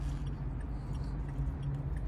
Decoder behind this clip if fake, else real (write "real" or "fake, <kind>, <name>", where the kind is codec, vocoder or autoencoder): real